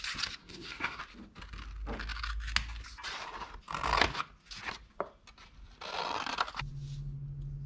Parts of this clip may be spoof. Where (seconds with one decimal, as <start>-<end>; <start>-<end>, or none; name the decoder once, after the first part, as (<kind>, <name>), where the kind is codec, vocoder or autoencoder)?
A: 0.4-1.0 (codec, SNAC)

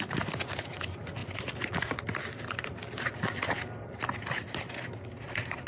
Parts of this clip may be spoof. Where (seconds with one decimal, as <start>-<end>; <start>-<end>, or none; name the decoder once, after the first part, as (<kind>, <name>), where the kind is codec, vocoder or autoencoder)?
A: none

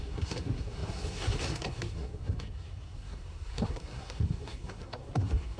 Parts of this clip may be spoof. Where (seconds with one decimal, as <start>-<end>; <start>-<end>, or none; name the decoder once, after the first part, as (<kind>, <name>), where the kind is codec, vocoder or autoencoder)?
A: 0.0-5.6 (codec, SNAC)

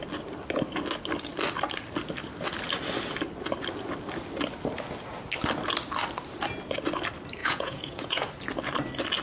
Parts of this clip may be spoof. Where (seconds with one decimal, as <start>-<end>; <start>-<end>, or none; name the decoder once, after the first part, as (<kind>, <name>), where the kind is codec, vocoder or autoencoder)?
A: 7.4-8.3 (vocoder, Vocos)

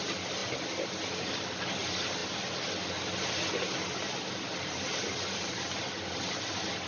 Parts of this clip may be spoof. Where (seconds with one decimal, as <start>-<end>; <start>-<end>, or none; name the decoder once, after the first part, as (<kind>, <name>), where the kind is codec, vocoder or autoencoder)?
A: none

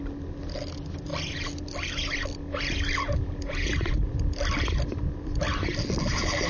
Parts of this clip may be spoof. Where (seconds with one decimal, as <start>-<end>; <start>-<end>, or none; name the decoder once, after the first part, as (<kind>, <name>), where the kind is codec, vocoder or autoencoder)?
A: none

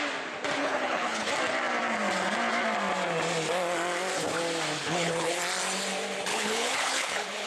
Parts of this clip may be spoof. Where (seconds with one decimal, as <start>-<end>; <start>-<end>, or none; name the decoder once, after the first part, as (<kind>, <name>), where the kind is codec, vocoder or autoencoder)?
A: 0.6-1.3 (codec, HILCodec); 4.8-5.4; 6.3-7.5

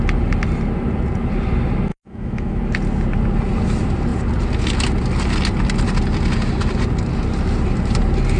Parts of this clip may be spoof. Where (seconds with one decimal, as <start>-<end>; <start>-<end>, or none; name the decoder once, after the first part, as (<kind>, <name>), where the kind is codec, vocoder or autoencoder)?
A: 1.9-2.6 (autoencoder, DAC-VAE)